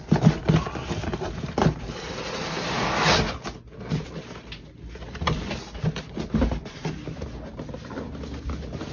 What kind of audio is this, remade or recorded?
recorded